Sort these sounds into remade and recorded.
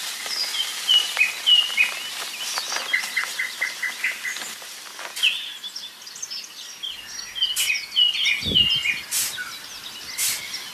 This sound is recorded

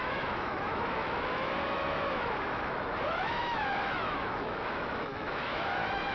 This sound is remade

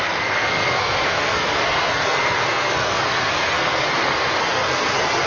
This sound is remade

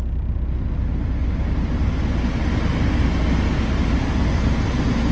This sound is recorded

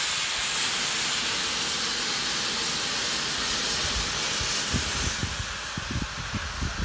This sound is recorded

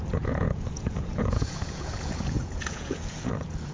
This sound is remade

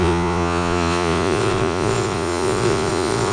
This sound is remade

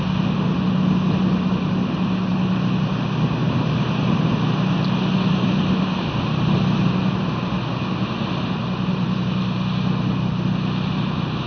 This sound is recorded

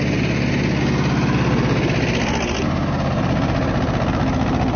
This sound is recorded